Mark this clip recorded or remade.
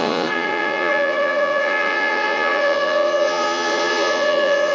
remade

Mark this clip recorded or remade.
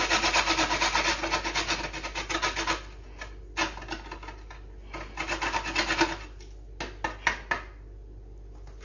recorded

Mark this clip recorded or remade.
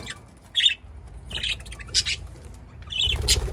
recorded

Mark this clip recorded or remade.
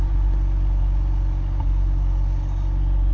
recorded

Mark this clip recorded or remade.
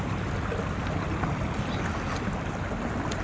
recorded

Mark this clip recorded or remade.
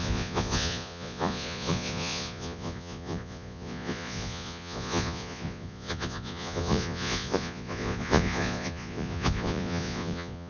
remade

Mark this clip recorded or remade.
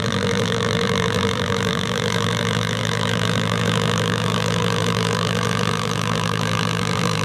remade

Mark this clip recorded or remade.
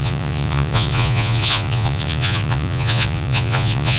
remade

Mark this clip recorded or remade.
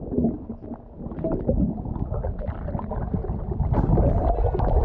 recorded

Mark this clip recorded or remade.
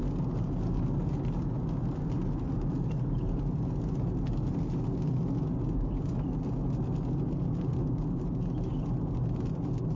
recorded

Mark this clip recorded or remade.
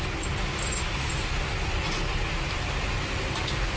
recorded